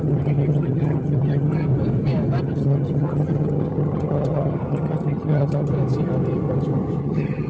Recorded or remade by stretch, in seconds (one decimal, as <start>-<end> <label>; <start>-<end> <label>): 0.0-1.7 remade; 1.7-2.4 recorded; 2.4-5.7 remade; 5.7-7.0 recorded; 7.0-7.5 remade